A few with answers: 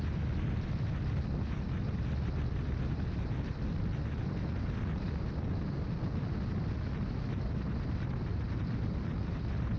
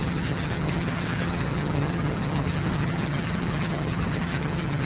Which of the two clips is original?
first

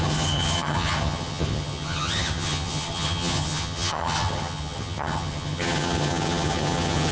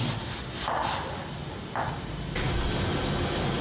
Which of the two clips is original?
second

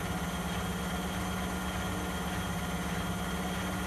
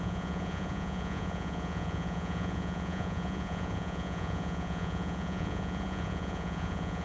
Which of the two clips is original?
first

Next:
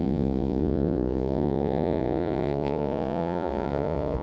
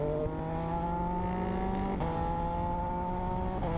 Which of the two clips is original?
second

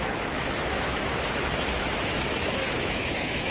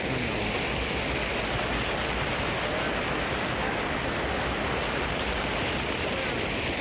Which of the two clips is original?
second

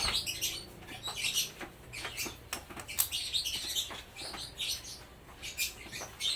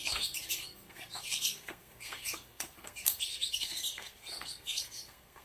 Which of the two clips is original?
first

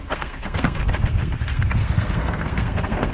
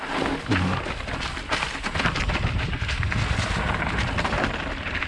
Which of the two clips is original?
second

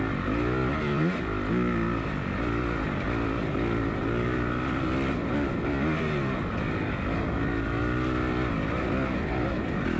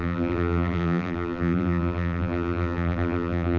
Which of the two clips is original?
first